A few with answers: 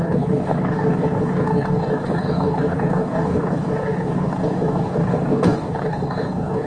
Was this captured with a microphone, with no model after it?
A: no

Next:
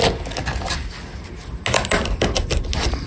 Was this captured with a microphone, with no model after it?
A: yes